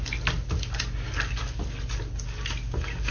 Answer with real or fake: real